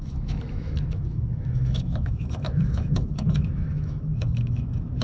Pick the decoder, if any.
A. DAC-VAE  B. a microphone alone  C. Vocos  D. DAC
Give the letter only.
A